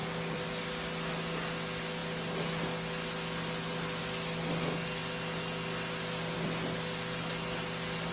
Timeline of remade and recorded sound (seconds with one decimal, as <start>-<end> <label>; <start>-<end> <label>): 0.0-8.1 recorded